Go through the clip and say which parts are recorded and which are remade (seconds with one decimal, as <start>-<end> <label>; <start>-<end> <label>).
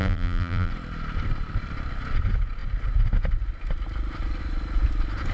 0.0-0.7 remade; 0.7-5.3 recorded